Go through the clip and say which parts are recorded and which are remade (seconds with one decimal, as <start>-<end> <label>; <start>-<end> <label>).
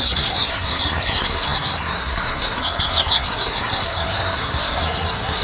0.0-5.4 remade